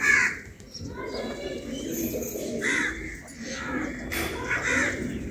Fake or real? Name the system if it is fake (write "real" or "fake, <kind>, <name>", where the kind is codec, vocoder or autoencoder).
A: real